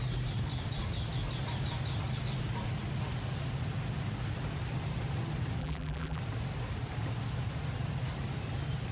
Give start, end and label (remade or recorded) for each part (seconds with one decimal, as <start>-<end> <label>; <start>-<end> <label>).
0.0-5.6 recorded; 5.6-6.2 remade; 6.2-8.9 recorded